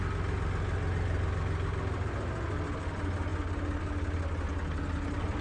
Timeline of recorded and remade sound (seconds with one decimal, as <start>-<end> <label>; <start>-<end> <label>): 0.0-5.4 recorded